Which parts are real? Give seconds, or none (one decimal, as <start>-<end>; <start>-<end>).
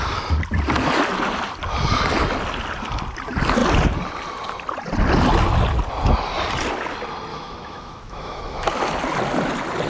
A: 0.0-7.3; 8.7-9.9